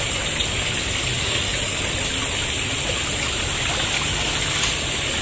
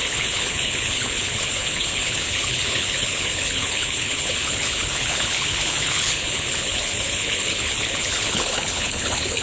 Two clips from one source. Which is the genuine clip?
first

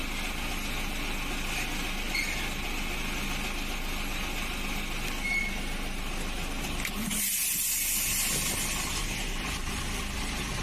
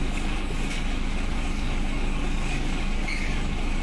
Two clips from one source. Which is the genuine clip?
first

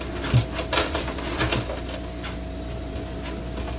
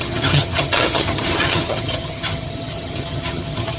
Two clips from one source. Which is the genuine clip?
first